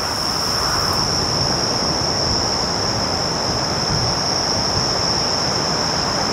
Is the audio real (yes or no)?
yes